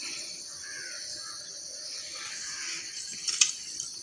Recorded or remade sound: recorded